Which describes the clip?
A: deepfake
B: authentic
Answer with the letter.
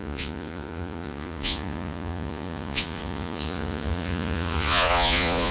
A